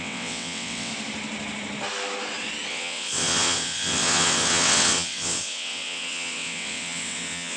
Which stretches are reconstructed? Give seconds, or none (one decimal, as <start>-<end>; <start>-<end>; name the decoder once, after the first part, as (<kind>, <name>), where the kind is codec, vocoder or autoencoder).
0.0-0.9 (vocoder, WaveNeXt); 2.7-7.6